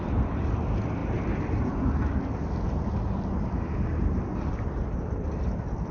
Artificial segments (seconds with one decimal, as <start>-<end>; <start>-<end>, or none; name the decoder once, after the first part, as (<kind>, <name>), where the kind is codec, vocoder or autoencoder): none